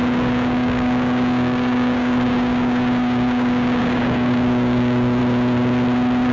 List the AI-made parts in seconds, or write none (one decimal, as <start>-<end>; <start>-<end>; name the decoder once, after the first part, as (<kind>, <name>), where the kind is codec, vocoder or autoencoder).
0.0-5.2 (codec, DAC)

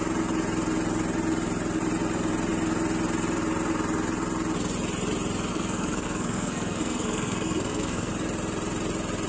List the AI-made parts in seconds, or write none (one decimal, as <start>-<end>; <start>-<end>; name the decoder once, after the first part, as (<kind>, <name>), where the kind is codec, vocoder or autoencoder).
5.5-8.1 (codec, SNAC)

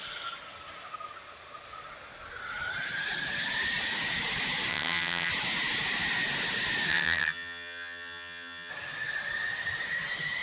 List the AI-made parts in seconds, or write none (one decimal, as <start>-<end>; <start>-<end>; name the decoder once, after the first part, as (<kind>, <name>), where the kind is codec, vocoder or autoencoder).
4.7-5.3 (vocoder, HiFi-GAN); 6.9-8.7

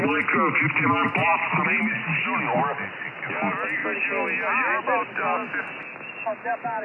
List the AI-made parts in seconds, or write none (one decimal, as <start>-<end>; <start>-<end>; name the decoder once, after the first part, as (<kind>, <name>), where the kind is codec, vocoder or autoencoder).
none

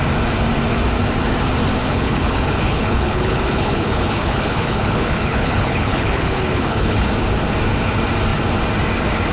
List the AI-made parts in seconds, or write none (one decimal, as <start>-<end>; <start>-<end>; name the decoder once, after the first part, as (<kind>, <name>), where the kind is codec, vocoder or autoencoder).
1.8-7.1 (codec, HILCodec)

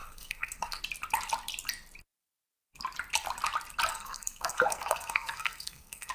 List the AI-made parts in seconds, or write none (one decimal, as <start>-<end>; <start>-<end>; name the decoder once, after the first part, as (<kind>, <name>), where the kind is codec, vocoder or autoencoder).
0.0-0.8 (codec, SNAC); 3.9-6.1

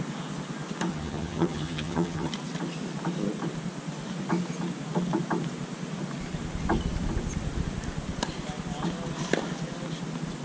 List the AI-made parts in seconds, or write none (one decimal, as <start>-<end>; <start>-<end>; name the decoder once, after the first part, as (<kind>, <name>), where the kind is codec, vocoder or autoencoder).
0.9-2.3 (vocoder, HiFi-GAN)